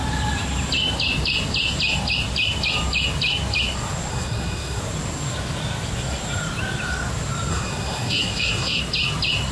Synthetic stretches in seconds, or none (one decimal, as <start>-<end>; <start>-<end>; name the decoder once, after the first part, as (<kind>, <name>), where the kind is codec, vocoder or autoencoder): 4.1-4.8 (codec, SNAC); 7.5-8.8